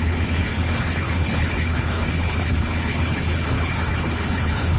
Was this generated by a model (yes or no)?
yes